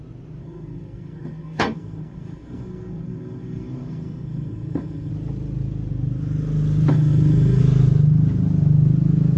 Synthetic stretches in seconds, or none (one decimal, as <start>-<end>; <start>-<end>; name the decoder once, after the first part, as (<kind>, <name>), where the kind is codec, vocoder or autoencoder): 0.4-5.1 (codec, SNAC); 6.9-7.6